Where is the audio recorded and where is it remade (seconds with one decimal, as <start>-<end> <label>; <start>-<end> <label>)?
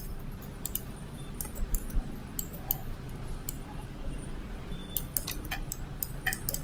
0.0-2.8 remade; 2.8-4.1 recorded; 4.1-4.8 remade; 4.8-5.7 recorded; 5.7-6.6 remade